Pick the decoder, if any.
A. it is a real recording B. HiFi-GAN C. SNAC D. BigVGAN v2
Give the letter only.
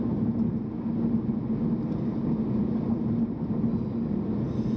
A